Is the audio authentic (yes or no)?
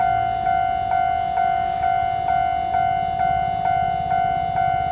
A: yes